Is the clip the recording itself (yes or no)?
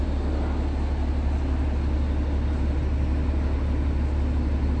yes